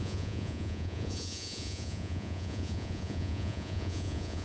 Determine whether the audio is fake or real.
fake